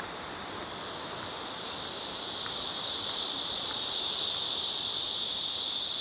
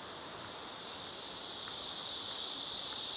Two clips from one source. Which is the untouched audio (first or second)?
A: second